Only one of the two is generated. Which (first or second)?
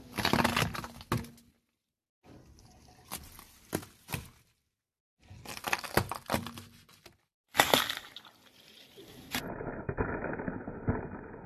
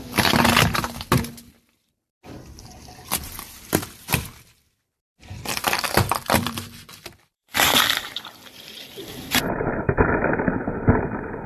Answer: second